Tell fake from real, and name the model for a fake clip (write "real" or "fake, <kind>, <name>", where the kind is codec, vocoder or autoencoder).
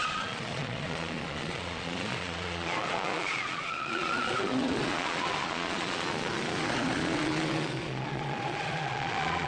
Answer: fake, vocoder, Vocos